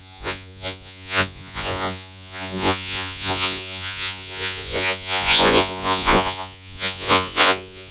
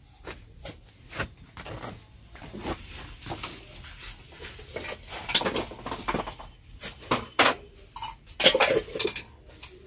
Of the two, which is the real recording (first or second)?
second